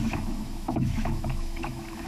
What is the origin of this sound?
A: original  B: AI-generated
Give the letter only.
B